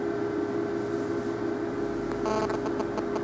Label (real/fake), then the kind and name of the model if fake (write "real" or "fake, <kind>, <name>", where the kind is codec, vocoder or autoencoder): real